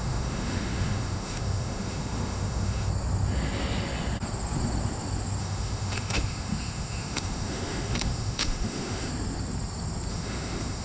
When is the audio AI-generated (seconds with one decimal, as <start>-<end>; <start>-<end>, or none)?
0.0-2.9; 5.4-9.1; 10.1-10.8